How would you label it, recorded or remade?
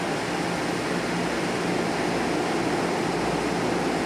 recorded